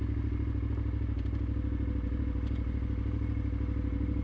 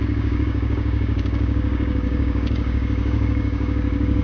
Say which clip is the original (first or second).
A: first